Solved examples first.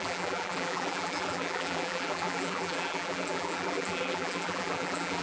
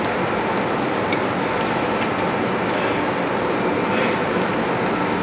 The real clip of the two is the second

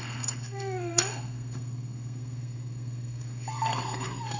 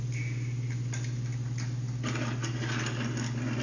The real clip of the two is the second